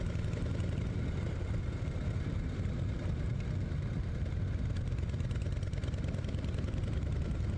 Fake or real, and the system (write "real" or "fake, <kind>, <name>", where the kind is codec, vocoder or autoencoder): real